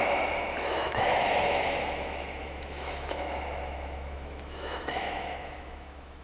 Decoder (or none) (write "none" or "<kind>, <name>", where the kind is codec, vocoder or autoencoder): autoencoder, DAC-VAE